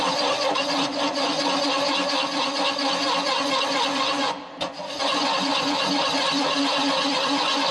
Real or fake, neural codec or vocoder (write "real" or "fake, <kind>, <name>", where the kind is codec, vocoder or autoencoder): fake, vocoder, Vocos